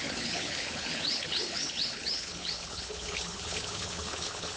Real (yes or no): no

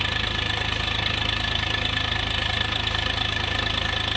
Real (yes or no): yes